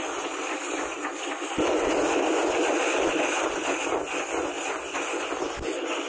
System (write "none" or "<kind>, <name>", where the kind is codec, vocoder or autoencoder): none